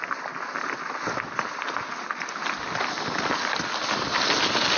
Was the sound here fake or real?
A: real